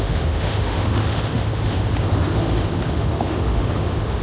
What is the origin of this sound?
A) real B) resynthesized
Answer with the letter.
B